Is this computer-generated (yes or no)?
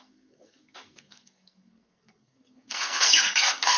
yes